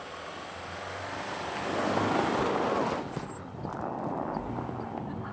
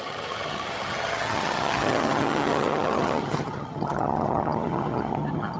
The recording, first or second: first